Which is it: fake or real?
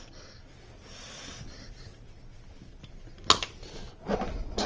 real